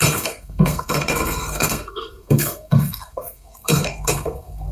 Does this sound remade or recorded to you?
remade